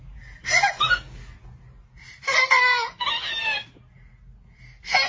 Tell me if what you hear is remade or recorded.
recorded